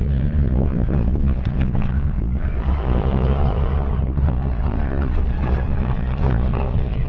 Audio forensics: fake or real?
fake